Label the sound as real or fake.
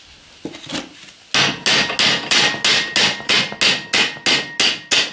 real